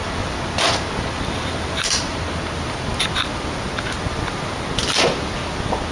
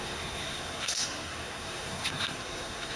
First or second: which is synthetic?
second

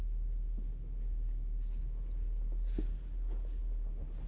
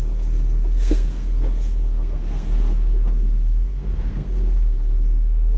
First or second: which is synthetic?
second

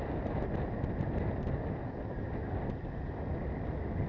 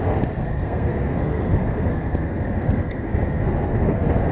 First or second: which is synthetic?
second